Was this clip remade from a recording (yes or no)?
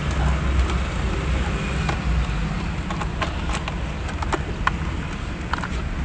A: no